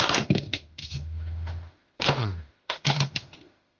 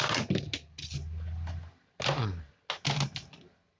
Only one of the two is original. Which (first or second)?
second